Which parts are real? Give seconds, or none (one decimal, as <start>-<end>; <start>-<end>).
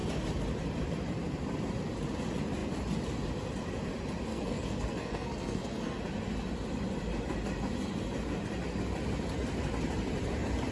0.0-4.3; 6.0-10.7